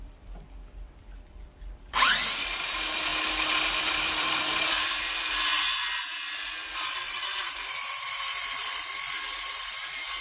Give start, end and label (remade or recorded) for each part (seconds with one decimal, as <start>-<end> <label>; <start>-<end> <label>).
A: 0.0-3.1 remade; 3.1-3.8 recorded; 3.8-5.5 remade; 5.5-6.3 recorded; 6.3-10.2 remade